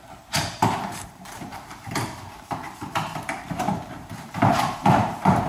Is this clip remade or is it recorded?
remade